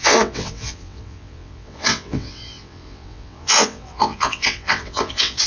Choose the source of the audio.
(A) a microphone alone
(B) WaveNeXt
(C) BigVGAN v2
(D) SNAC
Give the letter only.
B